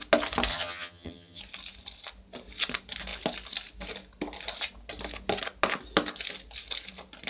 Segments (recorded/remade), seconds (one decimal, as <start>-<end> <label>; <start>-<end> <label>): 0.0-0.5 recorded; 0.5-1.4 remade; 1.4-7.3 recorded